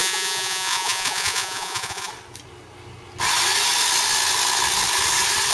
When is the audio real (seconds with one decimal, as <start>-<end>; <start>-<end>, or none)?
2.1-5.5